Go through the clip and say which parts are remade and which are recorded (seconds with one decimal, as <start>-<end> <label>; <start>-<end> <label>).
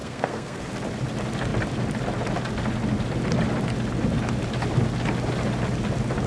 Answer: 0.0-0.6 remade; 0.6-6.3 recorded